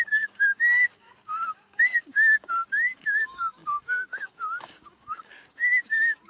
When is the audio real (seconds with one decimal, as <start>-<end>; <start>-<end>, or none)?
none

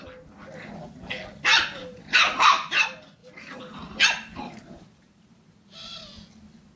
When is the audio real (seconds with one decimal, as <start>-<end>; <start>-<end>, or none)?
0.0-1.8; 2.8-3.2; 6.0-6.8